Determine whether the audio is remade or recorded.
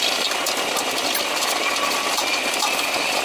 remade